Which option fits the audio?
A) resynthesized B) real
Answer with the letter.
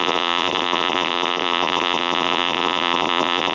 A